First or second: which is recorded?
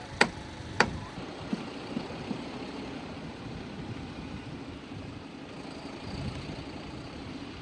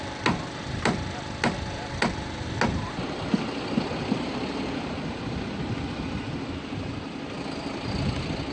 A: second